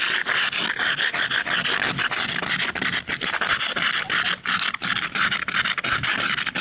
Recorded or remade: recorded